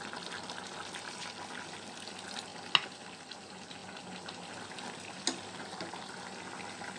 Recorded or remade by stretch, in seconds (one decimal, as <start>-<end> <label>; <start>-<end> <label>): 0.0-7.0 recorded